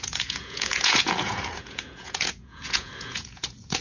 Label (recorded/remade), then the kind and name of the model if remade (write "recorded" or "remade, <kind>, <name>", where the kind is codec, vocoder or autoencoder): remade, vocoder, Vocos